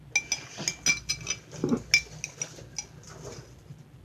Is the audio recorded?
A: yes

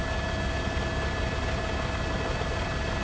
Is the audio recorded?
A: yes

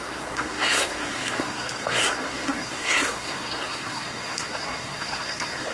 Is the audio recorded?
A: no